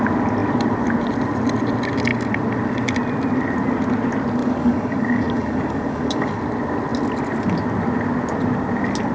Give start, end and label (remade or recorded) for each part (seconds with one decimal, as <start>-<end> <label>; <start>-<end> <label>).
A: 0.0-4.4 recorded; 4.4-6.4 remade; 6.4-9.1 recorded